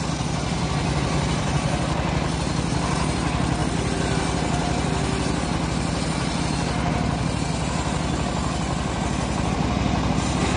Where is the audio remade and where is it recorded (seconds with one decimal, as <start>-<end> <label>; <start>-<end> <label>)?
0.0-10.6 recorded